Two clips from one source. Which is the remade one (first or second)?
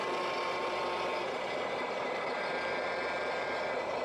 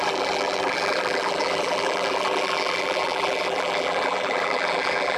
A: second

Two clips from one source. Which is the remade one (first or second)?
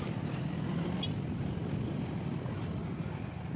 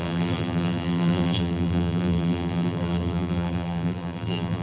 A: second